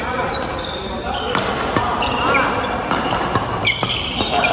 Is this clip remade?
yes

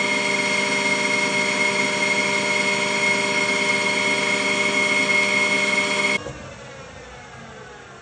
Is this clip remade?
no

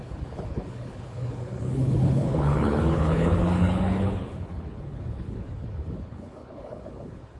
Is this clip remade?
yes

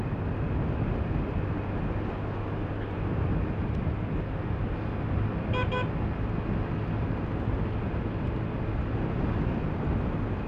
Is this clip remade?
no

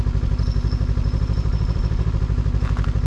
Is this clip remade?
no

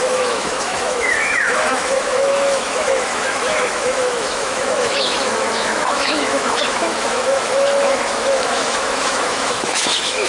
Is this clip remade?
yes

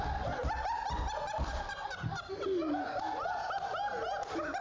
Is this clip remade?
no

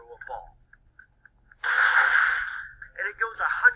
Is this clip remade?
no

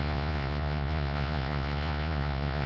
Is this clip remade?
yes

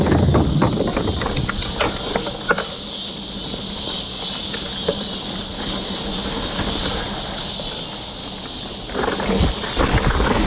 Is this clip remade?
no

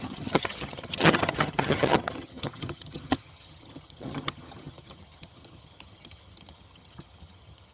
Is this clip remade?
yes